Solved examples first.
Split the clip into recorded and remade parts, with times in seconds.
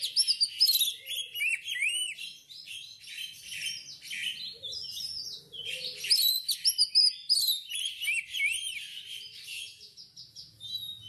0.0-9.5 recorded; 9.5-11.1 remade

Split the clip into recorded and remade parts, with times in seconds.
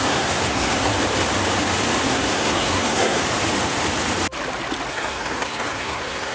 0.0-0.9 remade; 0.9-2.0 recorded; 2.0-3.2 remade; 3.2-4.9 recorded; 4.9-6.3 remade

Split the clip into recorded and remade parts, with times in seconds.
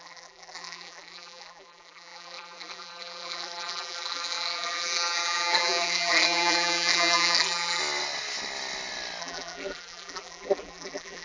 0.0-7.8 remade; 7.8-9.2 recorded; 9.2-11.2 remade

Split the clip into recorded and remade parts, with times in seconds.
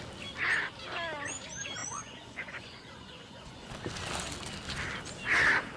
0.0-1.8 recorded; 1.8-3.7 remade; 3.7-5.8 recorded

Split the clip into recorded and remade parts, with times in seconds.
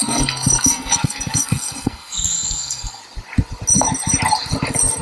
0.0-3.0 remade; 3.0-5.0 recorded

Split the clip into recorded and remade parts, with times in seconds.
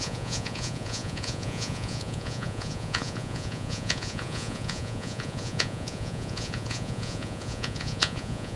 0.0-8.6 remade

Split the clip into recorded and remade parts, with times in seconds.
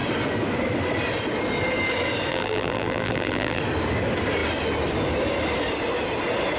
0.0-2.3 recorded; 2.3-3.6 remade; 3.6-6.6 recorded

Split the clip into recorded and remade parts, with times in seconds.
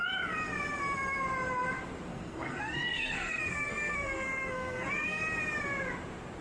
0.0-2.1 recorded; 2.1-5.2 remade; 5.2-6.4 recorded